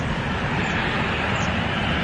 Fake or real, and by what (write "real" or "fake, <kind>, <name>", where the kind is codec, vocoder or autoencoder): real